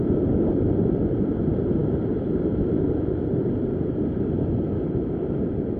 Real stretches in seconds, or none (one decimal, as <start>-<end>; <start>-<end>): 0.0-5.8